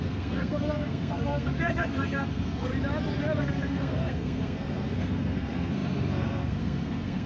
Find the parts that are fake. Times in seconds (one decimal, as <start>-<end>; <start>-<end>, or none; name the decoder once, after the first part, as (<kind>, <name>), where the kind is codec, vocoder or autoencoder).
0.0-2.7 (codec, SNAC); 3.4-7.3